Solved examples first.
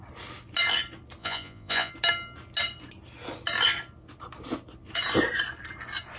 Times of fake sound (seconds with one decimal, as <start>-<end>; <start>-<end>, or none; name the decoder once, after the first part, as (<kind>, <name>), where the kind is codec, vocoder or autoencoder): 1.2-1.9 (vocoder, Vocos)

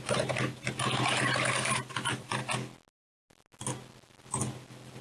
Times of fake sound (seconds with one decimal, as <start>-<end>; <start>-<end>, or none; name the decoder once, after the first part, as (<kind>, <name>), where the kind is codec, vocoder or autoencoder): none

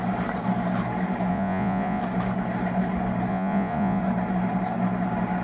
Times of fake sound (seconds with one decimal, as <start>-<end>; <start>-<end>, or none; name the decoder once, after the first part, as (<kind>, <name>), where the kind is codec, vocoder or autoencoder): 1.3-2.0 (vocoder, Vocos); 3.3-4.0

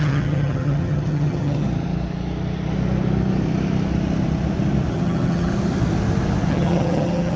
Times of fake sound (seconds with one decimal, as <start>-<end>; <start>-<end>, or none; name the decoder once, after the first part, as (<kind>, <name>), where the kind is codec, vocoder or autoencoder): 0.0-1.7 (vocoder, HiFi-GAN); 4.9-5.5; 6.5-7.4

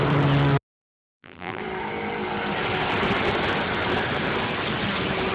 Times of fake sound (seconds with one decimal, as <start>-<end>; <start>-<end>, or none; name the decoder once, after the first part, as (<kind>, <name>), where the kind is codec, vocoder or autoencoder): 0.8-1.6 (vocoder, BigVGAN v2)